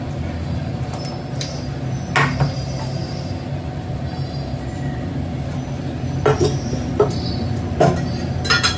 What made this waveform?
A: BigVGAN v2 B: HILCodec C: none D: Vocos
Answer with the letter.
C